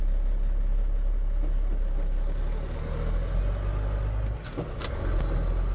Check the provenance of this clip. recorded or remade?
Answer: recorded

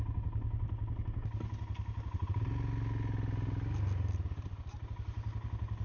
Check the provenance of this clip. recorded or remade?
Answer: recorded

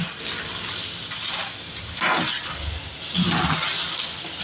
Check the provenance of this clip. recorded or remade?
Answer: recorded